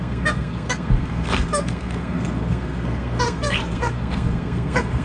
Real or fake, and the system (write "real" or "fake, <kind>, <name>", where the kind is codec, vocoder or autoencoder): fake, codec, SNAC